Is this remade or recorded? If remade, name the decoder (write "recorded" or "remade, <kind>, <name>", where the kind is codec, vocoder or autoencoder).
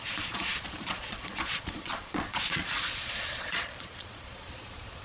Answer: remade, vocoder, Vocos